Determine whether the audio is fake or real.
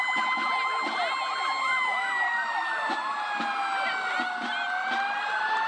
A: real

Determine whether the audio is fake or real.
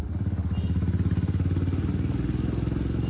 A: real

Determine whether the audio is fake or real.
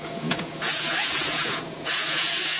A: fake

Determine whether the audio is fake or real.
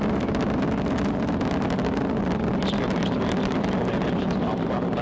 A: real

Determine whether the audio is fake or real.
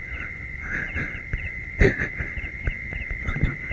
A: fake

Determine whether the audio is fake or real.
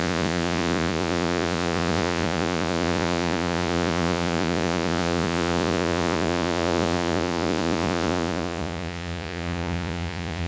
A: fake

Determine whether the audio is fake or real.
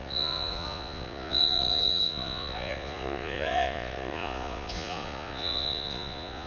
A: fake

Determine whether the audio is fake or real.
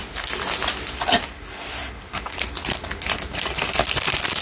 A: real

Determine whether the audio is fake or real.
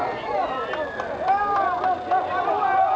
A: real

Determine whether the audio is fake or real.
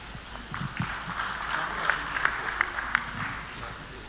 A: real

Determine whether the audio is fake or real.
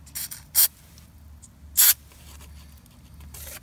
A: real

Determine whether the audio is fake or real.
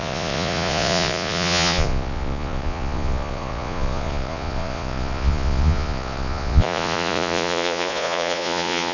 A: fake